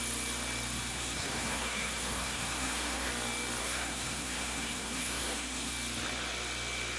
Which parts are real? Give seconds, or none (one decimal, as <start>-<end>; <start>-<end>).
0.0-0.9; 3.1-3.6; 5.7-7.0